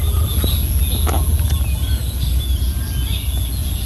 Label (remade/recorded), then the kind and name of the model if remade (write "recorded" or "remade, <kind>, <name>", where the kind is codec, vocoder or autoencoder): recorded